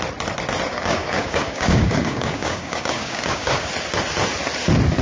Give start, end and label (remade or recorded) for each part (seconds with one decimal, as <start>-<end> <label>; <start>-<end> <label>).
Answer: 0.0-0.7 recorded; 0.7-3.7 remade; 3.7-5.0 recorded